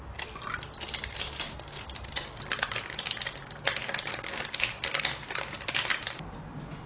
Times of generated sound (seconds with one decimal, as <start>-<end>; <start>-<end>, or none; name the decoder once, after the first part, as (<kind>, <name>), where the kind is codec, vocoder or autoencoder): none